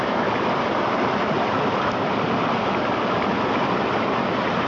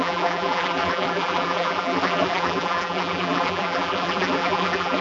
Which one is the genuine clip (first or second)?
first